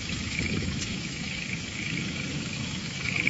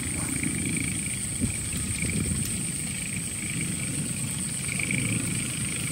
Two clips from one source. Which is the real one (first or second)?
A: second